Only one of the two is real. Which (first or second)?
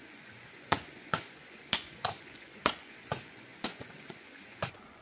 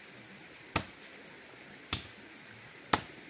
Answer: second